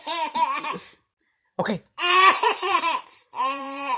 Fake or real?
fake